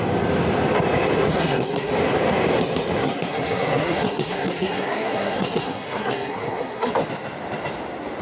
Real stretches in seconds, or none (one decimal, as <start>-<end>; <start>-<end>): 0.0-1.3; 1.9-3.0; 6.9-8.2

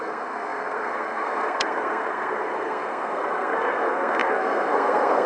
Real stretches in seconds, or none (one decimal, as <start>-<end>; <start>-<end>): none

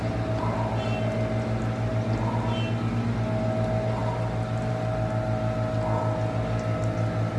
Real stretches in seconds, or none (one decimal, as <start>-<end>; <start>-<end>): 0.0-7.4

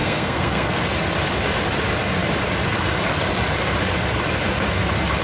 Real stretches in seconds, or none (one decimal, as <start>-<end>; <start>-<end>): 0.7-5.2